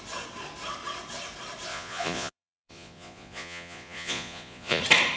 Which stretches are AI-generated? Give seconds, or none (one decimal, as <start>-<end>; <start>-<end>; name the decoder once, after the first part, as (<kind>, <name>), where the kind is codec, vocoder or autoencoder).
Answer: 1.7-4.8 (vocoder, Vocos)